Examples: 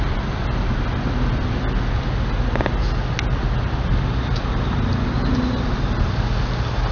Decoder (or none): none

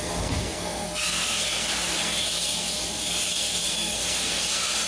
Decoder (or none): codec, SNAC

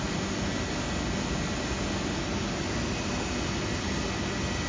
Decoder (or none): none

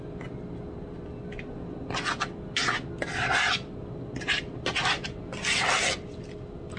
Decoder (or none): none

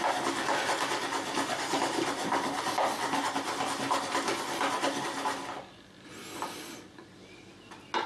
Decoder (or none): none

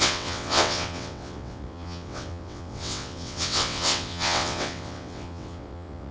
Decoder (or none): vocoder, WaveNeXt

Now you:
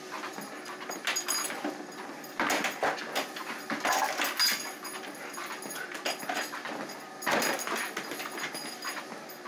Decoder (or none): none